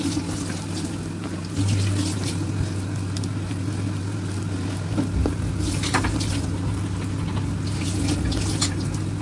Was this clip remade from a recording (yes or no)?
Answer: no